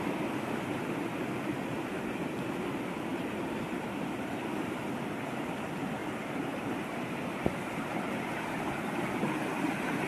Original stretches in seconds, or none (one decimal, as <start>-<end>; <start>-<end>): 0.0-3.1; 3.6-10.1